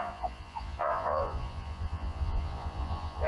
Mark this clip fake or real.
fake